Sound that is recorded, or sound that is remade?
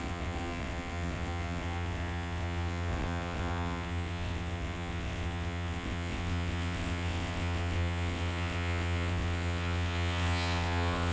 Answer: remade